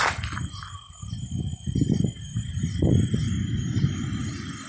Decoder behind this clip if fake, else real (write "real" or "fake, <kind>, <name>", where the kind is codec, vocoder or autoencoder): real